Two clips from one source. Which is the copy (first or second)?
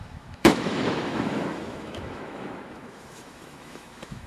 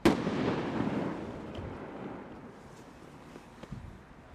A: first